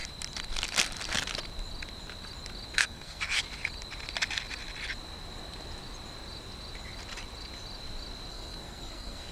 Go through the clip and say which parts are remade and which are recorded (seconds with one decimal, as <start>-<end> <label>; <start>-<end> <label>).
0.0-2.8 recorded; 2.8-3.4 remade; 3.4-8.3 recorded; 8.3-9.3 remade